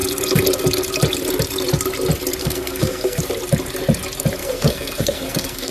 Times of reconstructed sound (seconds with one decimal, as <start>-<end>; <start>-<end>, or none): 2.4-3.2; 4.4-5.7